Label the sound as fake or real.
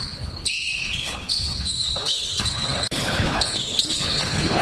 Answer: fake